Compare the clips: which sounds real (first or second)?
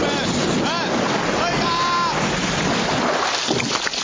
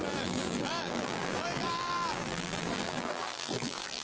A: first